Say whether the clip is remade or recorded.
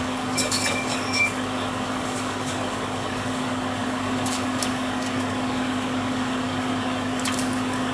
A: remade